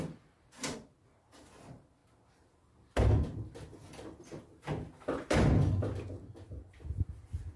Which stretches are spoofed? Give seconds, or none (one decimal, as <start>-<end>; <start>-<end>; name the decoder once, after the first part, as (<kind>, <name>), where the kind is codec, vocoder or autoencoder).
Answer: none